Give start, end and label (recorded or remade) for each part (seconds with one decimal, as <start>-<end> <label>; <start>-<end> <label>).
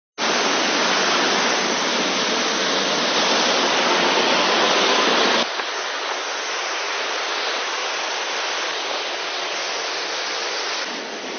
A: 0.0-11.4 recorded